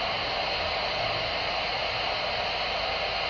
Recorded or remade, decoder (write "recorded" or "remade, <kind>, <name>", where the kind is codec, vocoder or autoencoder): recorded